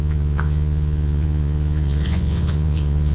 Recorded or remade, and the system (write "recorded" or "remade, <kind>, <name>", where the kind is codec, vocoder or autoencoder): remade, vocoder, Vocos